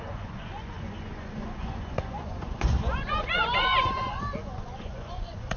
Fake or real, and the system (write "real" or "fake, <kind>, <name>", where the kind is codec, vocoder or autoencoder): fake, vocoder, Vocos